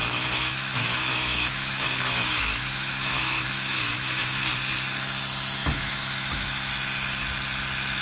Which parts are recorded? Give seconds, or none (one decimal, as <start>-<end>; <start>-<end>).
4.4-5.6; 6.7-8.0